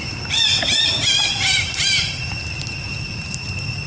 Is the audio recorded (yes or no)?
no